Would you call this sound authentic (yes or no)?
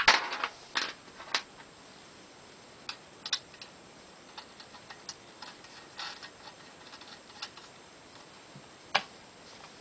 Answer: yes